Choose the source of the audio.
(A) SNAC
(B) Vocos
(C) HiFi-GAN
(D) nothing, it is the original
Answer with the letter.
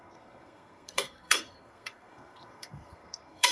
A